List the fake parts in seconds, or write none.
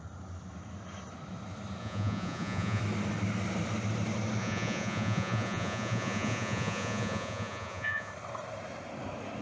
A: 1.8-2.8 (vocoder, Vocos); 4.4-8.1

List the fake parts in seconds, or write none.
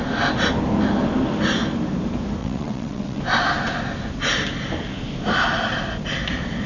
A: 2.4-3.2 (vocoder, WaveNeXt)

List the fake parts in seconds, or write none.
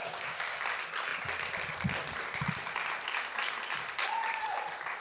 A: 0.0-0.6 (codec, DAC)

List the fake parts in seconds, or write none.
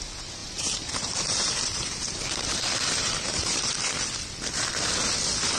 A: 0.4-3.8 (vocoder, BigVGAN v2)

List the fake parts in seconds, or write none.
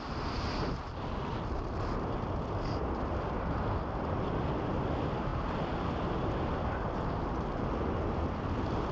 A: none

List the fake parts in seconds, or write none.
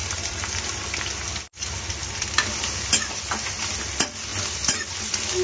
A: none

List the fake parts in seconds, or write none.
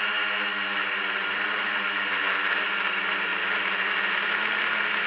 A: none